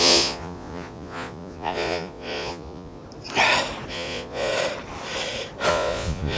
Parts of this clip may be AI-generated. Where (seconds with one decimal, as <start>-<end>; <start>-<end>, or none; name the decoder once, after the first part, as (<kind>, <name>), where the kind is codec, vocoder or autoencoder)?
0.0-3.0 (vocoder, Vocos); 3.9-4.5; 5.7-6.4